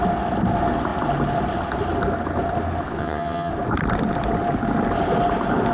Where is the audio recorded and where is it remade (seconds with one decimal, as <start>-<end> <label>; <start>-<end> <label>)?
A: 0.0-3.0 recorded; 3.0-3.5 remade; 3.5-5.7 recorded